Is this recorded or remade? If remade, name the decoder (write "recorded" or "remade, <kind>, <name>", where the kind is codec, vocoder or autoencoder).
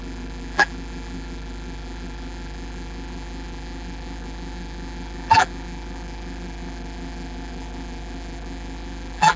remade, vocoder, BigVGAN v2